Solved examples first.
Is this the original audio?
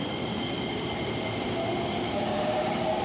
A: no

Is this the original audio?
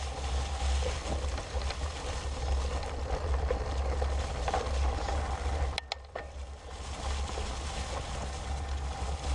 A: yes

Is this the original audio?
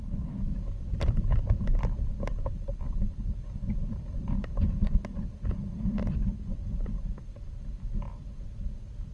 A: no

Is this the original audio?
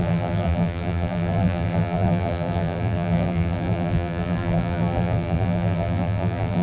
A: no